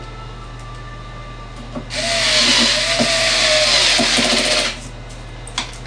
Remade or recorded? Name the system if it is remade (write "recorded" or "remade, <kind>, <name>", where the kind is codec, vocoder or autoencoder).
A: recorded